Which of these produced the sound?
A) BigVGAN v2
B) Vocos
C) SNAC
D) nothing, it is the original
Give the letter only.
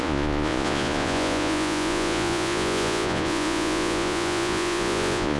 B